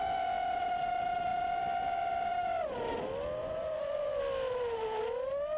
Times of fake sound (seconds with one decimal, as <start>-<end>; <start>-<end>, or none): 3.4-4.2